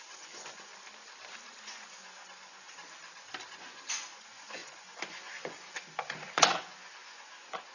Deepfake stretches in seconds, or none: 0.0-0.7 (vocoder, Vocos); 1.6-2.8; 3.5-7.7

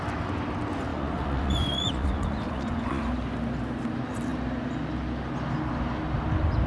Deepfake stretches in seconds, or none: 0.9-3.0 (vocoder, Vocos)

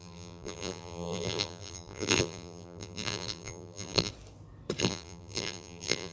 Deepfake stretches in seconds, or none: 0.0-4.1 (vocoder, BigVGAN v2); 4.8-6.1

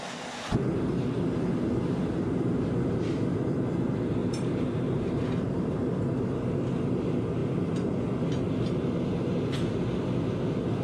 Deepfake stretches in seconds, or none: 4.2-5.8 (vocoder, BigVGAN v2)

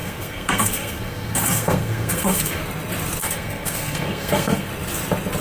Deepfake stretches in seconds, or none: 0.0-2.6 (codec, SNAC); 3.2-4.7

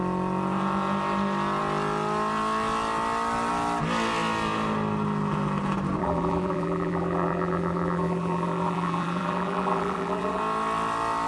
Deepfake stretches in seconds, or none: 6.0-10.4 (vocoder, BigVGAN v2)

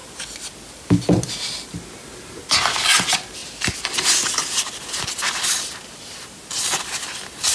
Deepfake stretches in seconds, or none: none

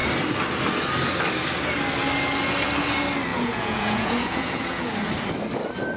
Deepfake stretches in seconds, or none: 3.3-4.9 (vocoder, Vocos)